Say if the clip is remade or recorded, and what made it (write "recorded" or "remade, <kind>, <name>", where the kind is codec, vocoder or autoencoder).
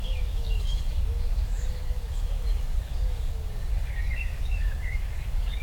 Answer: remade, codec, DAC